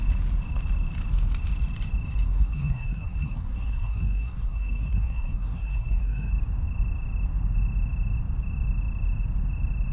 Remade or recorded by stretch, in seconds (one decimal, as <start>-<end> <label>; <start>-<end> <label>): 0.0-2.3 recorded; 2.3-6.3 remade; 6.3-9.9 recorded